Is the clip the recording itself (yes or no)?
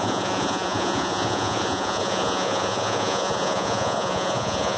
no